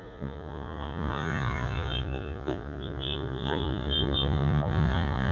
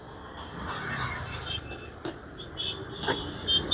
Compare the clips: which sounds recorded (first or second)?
second